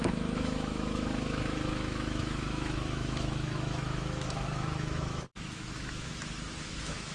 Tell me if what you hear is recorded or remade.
remade